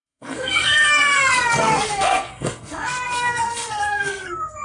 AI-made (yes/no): yes